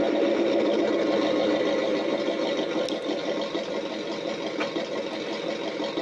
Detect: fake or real real